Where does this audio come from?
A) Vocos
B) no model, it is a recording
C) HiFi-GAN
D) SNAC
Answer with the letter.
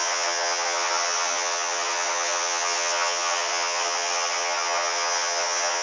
C